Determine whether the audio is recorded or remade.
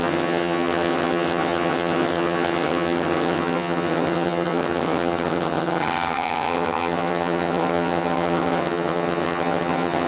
remade